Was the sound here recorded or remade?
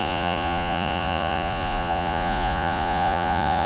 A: remade